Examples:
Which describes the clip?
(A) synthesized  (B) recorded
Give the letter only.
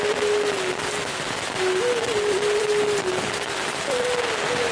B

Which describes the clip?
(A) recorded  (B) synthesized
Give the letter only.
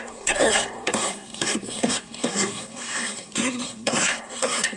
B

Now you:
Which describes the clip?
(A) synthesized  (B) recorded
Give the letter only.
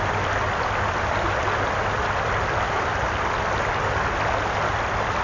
B